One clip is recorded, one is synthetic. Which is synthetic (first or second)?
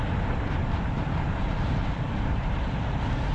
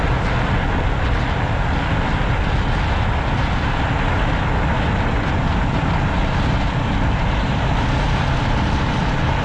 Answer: first